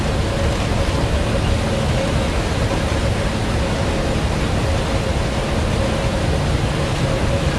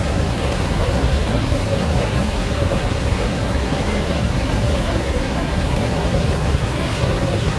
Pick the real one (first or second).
first